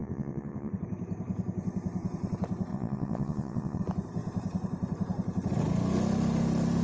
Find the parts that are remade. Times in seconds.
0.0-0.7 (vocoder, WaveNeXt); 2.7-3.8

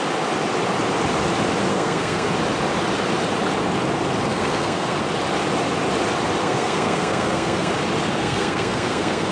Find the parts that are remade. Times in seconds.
1.7-2.3 (codec, SNAC); 4.3-5.0; 6.4-7.7; 8.2-9.3

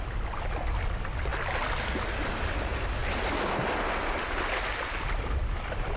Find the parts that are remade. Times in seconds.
none

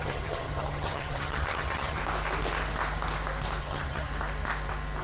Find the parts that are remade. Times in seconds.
0.0-2.0 (vocoder, HiFi-GAN); 3.6-4.1

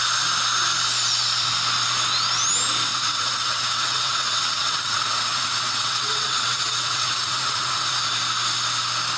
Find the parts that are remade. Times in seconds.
2.9-8.0 (vocoder, WaveNeXt)

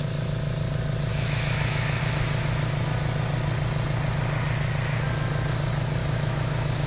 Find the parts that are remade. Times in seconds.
1.1-2.0 (autoencoder, DAC-VAE); 6.0-6.9

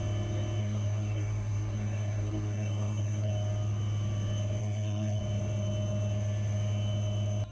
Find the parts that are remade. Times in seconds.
0.6-3.3 (codec, SNAC); 4.6-5.2

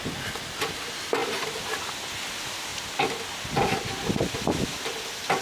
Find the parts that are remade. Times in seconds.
none